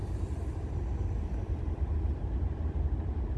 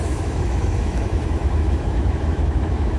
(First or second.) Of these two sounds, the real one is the first